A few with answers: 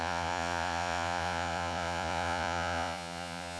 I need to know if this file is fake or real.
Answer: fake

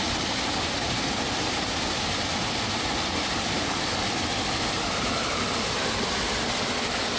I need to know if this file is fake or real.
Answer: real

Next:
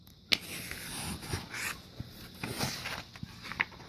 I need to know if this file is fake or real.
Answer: real